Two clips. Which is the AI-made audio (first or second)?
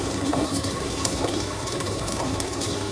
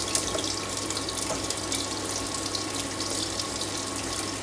first